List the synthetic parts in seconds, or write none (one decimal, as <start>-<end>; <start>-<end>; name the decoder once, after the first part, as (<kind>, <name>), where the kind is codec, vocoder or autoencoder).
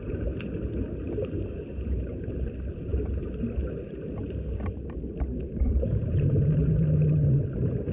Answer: none